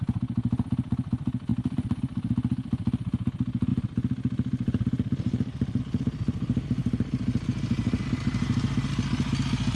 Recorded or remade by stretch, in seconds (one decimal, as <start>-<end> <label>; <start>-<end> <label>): 0.0-1.5 recorded; 1.5-2.3 remade; 2.3-3.7 recorded; 3.7-5.8 remade; 5.8-9.8 recorded